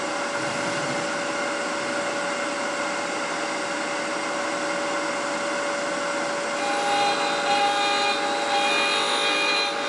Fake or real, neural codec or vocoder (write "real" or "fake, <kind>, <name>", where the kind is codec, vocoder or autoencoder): real